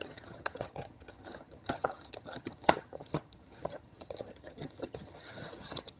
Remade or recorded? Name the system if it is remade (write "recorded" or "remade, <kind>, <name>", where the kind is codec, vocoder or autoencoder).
remade, vocoder, HiFi-GAN